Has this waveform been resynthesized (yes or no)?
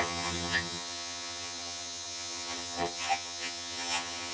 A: yes